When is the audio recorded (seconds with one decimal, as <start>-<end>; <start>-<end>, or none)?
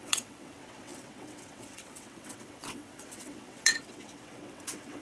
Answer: none